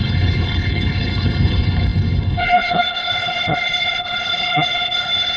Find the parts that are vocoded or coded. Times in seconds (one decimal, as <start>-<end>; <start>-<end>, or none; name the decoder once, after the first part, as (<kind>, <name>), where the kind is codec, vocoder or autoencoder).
0.0-5.4 (codec, HILCodec)